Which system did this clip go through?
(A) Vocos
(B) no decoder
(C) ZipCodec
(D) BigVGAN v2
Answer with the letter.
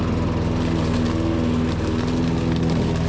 B